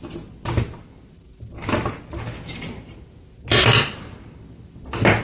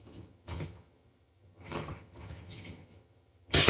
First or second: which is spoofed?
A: second